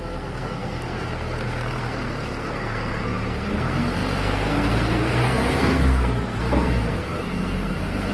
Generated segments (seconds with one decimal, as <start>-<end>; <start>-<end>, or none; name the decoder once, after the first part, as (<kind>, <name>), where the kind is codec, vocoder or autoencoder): 0.0-8.1 (codec, SNAC)